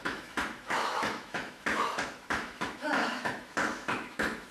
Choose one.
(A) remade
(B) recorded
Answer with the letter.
A